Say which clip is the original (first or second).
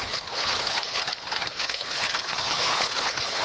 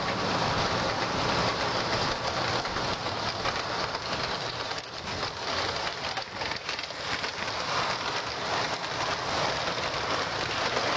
second